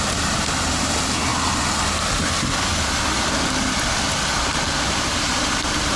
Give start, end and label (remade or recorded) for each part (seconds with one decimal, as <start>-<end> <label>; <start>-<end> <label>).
0.0-1.3 remade; 1.3-4.9 recorded; 4.9-6.0 remade